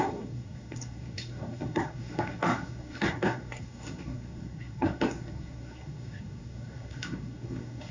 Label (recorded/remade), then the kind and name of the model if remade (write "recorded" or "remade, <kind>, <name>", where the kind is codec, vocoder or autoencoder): remade, codec, SNAC